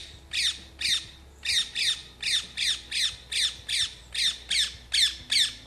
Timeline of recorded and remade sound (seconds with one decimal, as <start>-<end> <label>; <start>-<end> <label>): 0.0-5.7 recorded